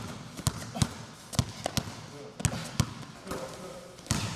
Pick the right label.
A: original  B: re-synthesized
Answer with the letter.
A